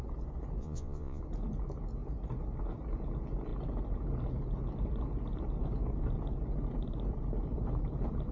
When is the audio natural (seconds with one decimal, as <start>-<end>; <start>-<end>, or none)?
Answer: 0.0-0.6; 1.2-8.3